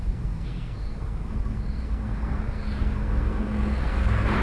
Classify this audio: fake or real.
fake